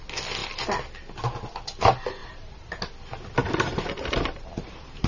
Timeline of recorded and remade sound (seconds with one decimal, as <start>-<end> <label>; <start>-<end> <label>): 0.0-2.2 recorded; 2.2-2.8 remade; 2.8-3.4 recorded; 3.4-5.1 remade